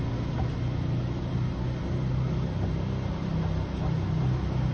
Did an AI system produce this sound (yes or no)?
no